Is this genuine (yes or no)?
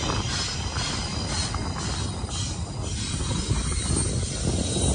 yes